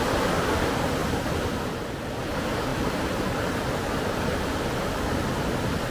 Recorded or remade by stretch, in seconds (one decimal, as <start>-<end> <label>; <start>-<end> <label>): 0.0-2.7 recorded; 2.7-5.5 remade; 5.5-5.9 recorded